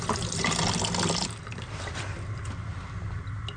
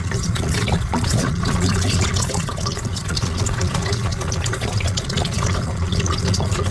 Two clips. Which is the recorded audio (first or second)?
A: first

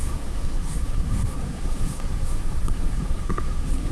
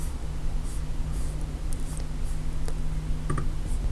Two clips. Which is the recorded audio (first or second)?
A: second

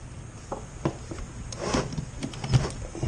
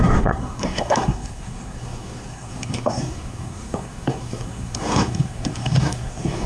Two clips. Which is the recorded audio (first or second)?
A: first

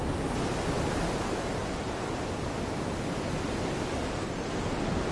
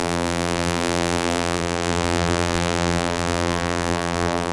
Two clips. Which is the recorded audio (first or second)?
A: first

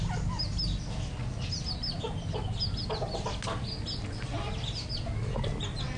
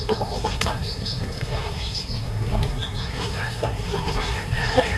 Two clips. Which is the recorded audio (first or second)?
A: first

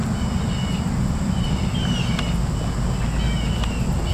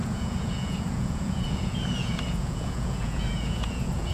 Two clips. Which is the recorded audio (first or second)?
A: first